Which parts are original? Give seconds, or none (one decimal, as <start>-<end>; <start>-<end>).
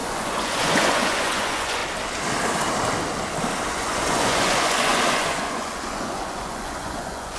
1.8-3.7